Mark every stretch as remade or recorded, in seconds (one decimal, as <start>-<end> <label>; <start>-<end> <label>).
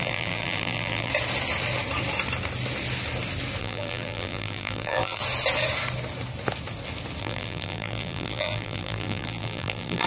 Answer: 0.0-1.1 remade; 1.1-3.6 recorded; 3.6-5.2 remade; 5.2-7.2 recorded; 7.2-10.1 remade